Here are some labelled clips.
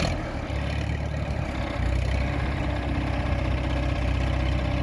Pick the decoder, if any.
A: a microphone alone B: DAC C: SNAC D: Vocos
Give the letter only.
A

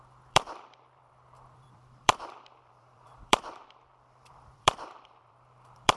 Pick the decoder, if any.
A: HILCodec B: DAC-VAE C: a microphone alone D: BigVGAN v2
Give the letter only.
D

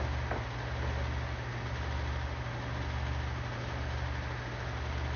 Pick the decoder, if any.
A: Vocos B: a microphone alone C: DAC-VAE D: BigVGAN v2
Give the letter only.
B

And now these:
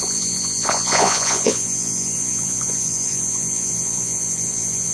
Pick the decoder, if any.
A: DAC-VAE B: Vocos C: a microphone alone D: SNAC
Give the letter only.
B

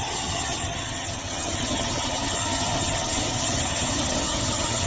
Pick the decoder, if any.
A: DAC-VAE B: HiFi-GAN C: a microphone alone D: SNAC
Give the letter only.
B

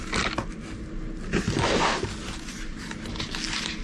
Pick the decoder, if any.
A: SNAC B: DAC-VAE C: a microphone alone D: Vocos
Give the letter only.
C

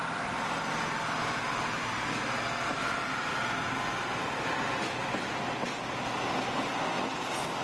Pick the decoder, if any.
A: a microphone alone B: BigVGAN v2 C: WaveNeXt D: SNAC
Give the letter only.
A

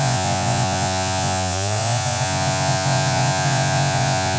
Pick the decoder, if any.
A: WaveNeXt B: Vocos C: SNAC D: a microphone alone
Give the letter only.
B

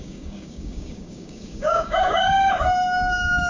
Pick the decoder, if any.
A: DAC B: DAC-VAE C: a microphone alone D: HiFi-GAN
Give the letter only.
A